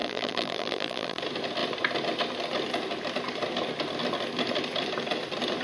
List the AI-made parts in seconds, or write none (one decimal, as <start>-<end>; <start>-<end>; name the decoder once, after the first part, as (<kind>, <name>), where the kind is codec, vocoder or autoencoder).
0.0-1.2 (vocoder, BigVGAN v2)